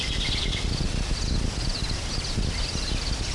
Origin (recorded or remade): recorded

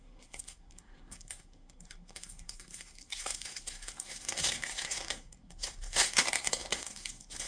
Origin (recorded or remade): remade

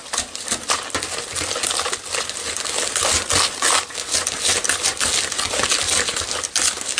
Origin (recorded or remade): recorded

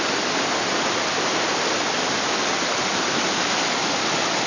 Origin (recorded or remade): recorded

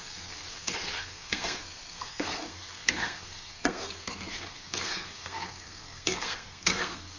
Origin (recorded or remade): remade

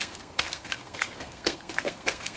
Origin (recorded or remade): remade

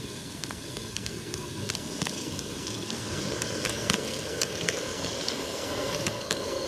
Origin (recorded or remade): remade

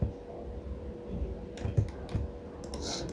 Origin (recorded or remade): recorded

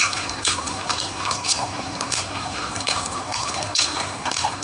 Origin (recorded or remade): remade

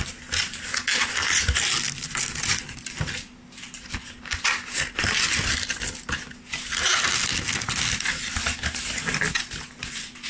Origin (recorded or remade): recorded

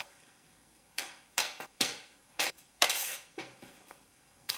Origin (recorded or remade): remade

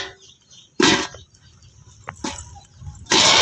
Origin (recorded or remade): recorded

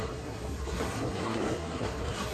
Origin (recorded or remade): remade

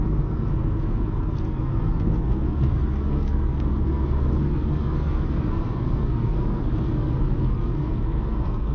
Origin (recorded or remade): remade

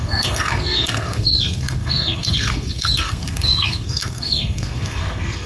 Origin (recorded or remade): remade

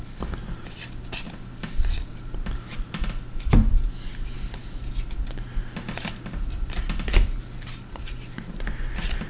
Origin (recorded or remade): recorded